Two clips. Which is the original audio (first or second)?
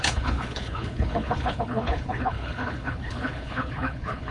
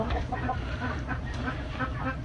second